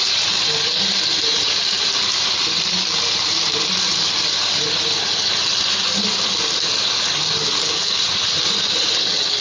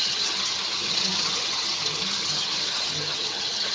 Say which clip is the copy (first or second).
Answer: second